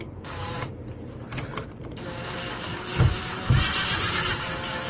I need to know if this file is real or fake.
fake